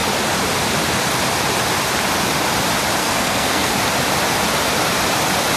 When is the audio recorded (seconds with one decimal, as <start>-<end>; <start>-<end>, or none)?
0.0-3.0; 3.7-5.6